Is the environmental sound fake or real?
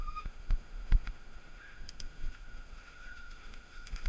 fake